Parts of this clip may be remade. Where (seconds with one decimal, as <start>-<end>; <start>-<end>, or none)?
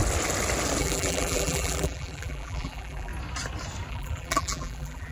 0.8-3.1; 3.9-5.1